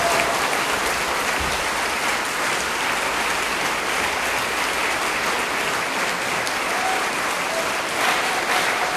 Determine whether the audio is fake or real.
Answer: fake